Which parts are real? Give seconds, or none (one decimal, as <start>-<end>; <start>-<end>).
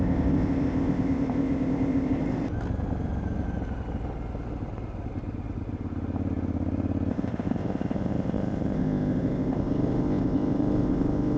2.2-7.1